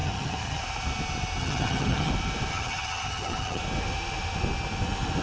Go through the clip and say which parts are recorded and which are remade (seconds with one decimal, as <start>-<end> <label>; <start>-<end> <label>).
0.0-0.6 remade; 0.6-1.4 recorded; 1.4-2.1 remade; 2.1-2.5 recorded; 2.5-3.6 remade; 3.6-5.2 recorded